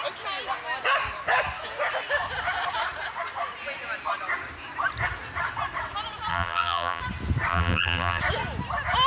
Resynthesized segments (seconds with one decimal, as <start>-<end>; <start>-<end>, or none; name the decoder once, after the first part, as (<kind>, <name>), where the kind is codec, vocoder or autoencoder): 6.3-7.0 (vocoder, BigVGAN v2); 7.5-8.2